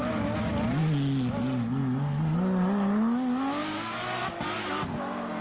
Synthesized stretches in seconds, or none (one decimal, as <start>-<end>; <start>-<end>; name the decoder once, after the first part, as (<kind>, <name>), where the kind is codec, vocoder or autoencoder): none